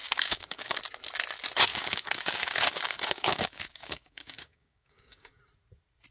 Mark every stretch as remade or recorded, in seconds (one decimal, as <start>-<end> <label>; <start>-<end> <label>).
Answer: 0.0-0.8 remade; 0.8-1.7 recorded; 1.7-5.4 remade; 5.4-6.1 recorded